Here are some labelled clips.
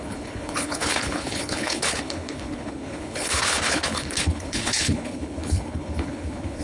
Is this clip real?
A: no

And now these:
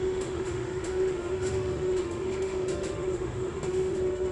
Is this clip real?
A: no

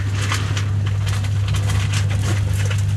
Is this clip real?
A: yes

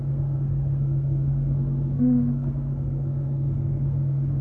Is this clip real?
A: no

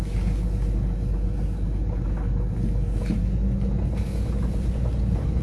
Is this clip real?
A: yes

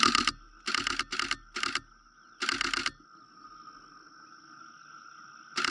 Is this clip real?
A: yes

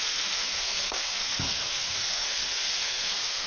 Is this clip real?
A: no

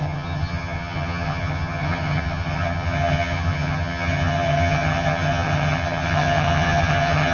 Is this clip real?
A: no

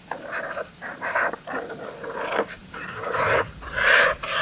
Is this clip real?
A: no